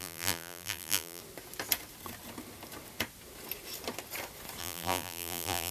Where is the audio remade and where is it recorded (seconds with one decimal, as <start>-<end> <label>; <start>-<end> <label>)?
0.0-1.2 remade; 1.2-4.6 recorded; 4.6-5.7 remade